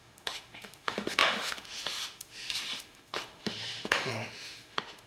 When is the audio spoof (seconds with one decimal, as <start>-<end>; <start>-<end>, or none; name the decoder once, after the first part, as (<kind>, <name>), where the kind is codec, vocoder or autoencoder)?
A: 0.0-5.1 (autoencoder, DAC-VAE)